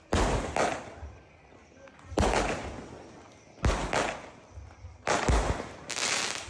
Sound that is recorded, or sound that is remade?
recorded